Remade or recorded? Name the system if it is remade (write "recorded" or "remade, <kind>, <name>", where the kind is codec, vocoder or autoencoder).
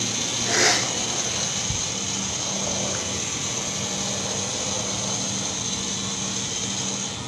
recorded